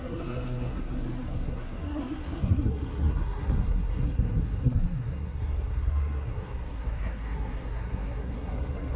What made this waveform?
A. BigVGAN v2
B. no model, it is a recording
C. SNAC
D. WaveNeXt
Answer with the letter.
C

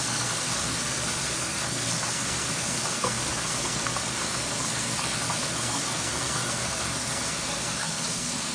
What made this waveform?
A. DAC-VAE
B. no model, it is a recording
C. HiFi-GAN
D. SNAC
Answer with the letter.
D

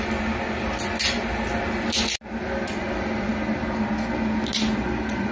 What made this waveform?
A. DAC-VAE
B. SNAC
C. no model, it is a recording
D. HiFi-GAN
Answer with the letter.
C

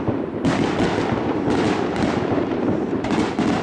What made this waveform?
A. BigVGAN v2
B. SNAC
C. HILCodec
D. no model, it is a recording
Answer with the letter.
D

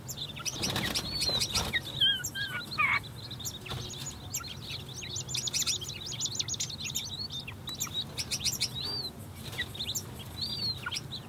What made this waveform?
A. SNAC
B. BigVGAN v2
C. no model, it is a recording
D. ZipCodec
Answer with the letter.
C